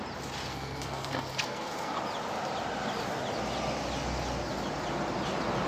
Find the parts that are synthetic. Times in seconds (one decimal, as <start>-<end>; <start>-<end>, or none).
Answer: 0.5-2.0

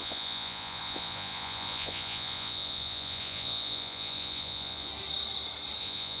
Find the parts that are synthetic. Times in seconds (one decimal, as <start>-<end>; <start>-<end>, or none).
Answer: 0.0-4.9; 5.8-6.2

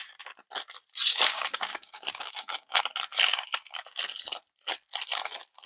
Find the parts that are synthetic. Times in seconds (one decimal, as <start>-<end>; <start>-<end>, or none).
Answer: 1.1-2.8; 3.3-4.0

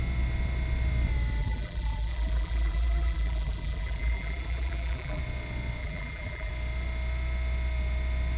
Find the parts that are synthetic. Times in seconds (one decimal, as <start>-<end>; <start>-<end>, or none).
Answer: 1.4-5.2; 5.8-6.5

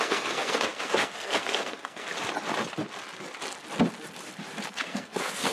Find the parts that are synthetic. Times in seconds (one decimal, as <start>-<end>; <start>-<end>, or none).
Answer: 0.0-2.1; 4.7-5.5

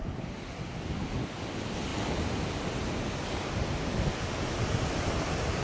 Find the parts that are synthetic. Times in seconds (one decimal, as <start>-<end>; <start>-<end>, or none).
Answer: none

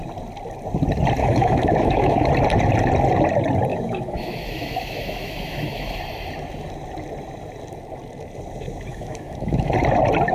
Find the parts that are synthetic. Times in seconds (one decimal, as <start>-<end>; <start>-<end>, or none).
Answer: 1.2-2.3; 3.7-6.0; 8.9-9.7

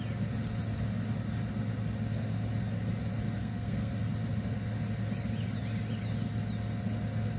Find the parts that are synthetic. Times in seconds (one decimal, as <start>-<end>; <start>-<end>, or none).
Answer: 3.4-3.9